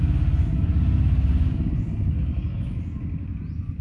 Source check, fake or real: real